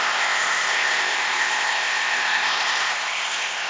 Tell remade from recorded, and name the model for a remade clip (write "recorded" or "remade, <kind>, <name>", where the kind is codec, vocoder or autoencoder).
remade, codec, ZipCodec